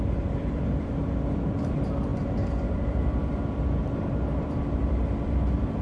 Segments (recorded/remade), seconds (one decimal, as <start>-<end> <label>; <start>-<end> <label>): 0.0-2.1 remade; 2.1-2.8 recorded; 2.8-5.8 remade

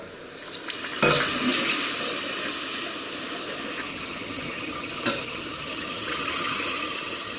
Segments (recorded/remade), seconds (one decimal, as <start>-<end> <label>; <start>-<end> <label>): 0.0-3.9 recorded; 3.9-7.4 remade

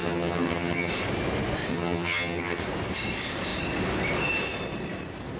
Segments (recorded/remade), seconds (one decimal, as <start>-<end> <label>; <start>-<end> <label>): 0.0-0.9 remade; 0.9-1.7 recorded; 1.7-2.6 remade; 2.6-5.4 recorded